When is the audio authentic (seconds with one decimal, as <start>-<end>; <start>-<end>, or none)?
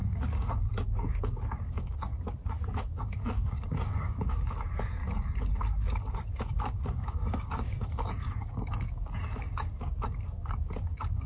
2.1-2.7; 5.0-5.5